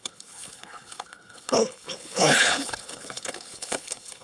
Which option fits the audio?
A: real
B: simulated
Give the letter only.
B